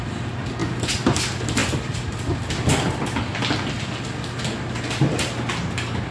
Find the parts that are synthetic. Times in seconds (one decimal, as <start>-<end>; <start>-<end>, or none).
none